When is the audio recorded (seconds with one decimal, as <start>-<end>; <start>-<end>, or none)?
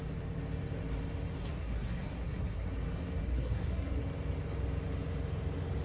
0.0-1.4; 2.7-3.2; 4.0-5.8